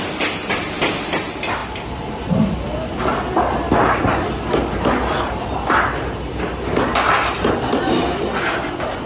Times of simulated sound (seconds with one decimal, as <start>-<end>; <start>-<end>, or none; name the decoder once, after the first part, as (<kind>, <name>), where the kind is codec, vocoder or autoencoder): none